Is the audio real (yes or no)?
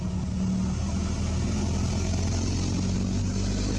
yes